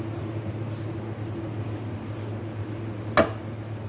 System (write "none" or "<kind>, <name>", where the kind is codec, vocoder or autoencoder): none